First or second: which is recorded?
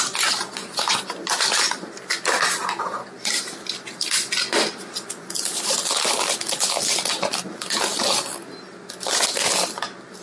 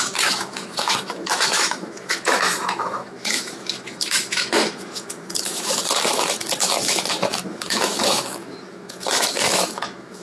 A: first